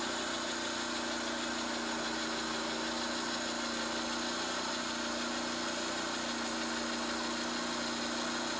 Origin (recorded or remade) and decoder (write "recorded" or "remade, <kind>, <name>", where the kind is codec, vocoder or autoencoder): recorded